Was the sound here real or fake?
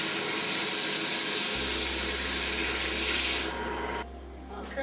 real